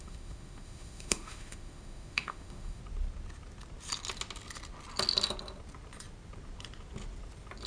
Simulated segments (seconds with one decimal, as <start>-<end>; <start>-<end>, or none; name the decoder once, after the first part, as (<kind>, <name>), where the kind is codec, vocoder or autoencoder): 0.0-2.8 (autoencoder, DAC-VAE)